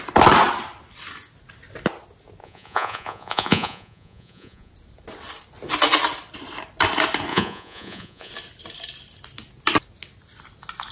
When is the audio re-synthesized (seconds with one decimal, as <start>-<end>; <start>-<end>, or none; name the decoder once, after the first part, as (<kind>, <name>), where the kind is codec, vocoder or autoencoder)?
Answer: 2.4-4.7 (vocoder, Vocos); 7.3-8.3